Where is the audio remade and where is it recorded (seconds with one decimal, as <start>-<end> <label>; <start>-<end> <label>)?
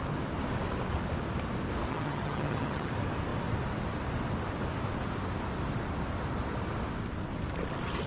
0.0-1.9 recorded; 1.9-2.9 remade; 2.9-8.1 recorded